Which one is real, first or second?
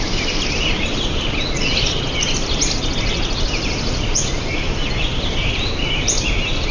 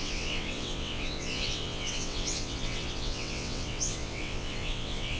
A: first